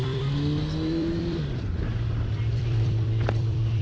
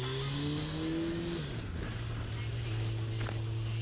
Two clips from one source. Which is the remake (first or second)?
first